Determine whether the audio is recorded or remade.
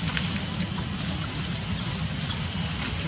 recorded